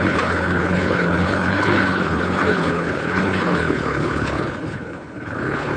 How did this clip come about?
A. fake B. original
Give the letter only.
A